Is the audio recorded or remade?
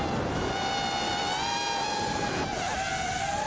recorded